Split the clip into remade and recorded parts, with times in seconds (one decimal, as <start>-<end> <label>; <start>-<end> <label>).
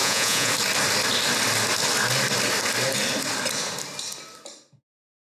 0.0-0.5 remade; 0.5-5.3 recorded